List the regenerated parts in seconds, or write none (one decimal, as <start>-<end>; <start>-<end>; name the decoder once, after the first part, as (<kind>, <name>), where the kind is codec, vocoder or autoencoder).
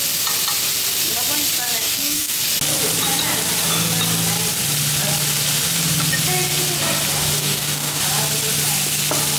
1.8-2.4 (codec, DAC); 7.4-8.0